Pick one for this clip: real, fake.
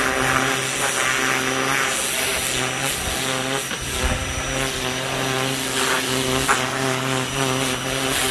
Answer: real